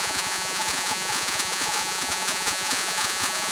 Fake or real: fake